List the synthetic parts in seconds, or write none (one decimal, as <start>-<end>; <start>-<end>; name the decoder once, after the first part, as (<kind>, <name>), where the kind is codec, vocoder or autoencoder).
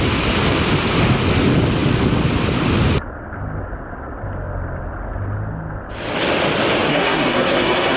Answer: 6.9-8.0 (codec, SNAC)